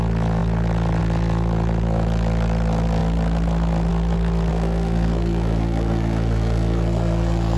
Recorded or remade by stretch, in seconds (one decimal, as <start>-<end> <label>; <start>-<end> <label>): 0.0-4.5 recorded; 4.5-7.6 remade